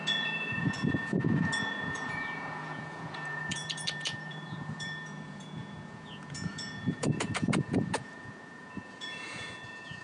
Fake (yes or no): yes